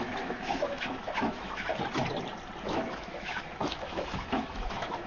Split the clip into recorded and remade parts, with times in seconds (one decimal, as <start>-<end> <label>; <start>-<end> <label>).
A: 0.0-1.7 remade; 1.7-2.6 recorded; 2.6-5.1 remade